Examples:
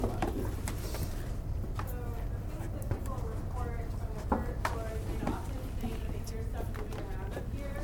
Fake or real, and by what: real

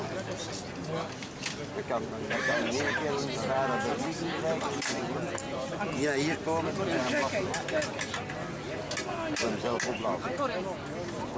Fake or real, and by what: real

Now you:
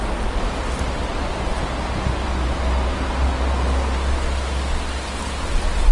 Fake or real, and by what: real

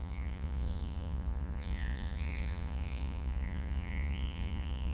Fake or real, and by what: fake, vocoder, Vocos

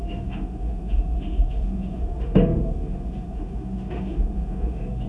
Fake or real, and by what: fake, autoencoder, DAC-VAE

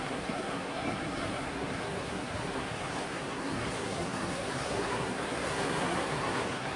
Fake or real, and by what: fake, codec, SNAC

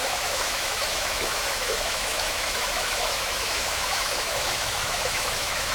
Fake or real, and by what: fake, autoencoder, DAC-VAE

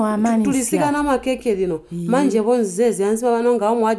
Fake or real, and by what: real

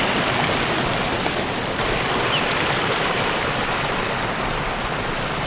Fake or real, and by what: real